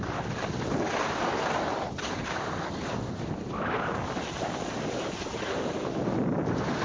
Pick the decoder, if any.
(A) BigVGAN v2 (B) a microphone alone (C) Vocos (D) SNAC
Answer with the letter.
B